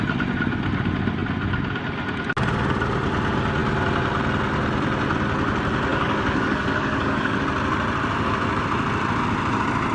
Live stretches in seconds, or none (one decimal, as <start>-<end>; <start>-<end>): 0.0-5.9; 7.4-9.9